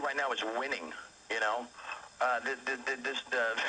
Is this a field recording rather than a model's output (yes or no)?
yes